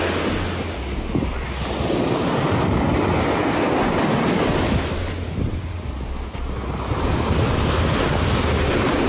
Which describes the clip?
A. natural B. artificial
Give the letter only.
A